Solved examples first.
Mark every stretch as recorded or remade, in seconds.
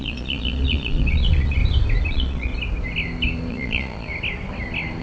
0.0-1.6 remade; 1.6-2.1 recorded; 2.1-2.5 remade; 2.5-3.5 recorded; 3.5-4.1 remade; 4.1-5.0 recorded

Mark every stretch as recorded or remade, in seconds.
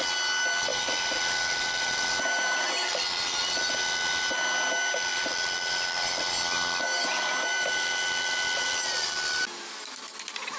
0.0-0.7 recorded; 0.7-2.7 remade; 2.7-5.1 recorded; 5.1-9.4 remade; 9.4-10.6 recorded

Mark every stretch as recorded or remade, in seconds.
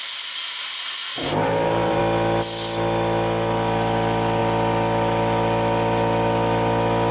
0.0-1.1 recorded; 1.1-2.0 remade; 2.0-7.1 recorded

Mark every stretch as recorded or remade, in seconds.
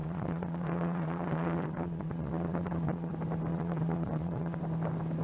0.0-3.1 remade; 3.1-3.5 recorded; 3.5-4.6 remade; 4.6-5.2 recorded